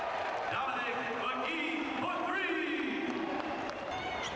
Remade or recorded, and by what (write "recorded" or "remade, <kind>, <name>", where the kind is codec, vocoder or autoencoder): remade, vocoder, BigVGAN v2